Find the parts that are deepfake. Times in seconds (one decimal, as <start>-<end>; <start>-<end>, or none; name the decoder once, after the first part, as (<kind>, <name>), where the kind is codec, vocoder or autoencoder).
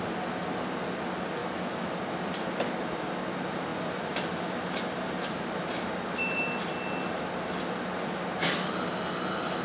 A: 1.4-1.9 (autoencoder, DAC-VAE)